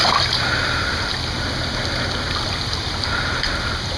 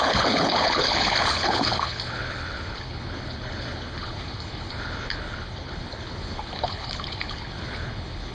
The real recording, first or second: first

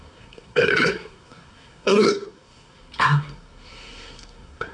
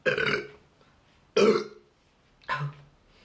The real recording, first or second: second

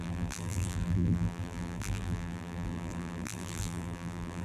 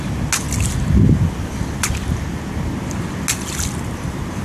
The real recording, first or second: second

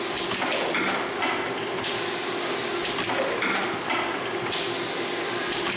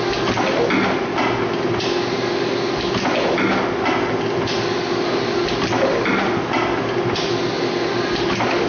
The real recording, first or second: second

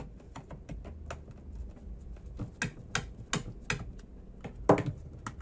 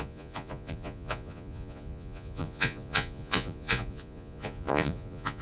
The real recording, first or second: first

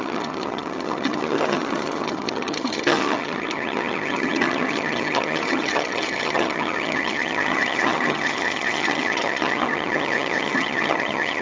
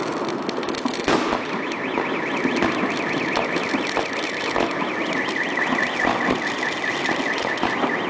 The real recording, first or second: second